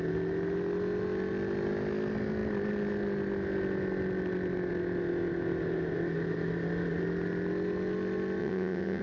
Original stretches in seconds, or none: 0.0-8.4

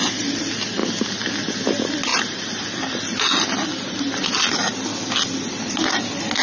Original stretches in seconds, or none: 0.0-6.4

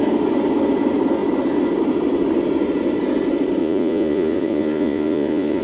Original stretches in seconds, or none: 0.0-3.6

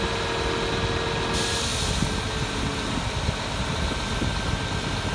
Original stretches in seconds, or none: 0.0-5.1

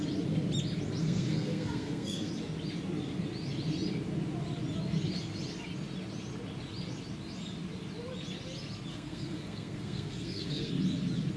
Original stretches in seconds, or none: 0.0-1.0; 2.3-8.9; 10.7-11.4

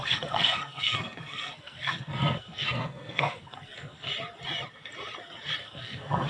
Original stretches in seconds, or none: 4.1-5.6

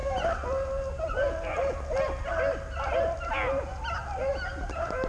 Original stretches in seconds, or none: 0.0-5.1